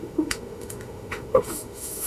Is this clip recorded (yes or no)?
no